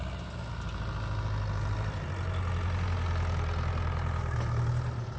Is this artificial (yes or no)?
no